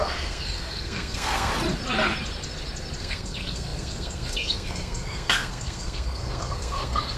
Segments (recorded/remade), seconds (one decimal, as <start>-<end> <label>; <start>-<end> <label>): 0.0-1.5 remade; 1.5-3.0 recorded; 3.0-7.2 remade